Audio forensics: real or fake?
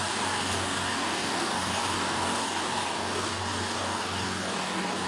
fake